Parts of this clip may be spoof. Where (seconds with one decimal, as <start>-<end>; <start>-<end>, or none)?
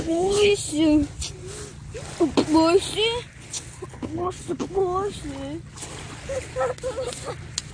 0.0-0.5; 3.9-4.8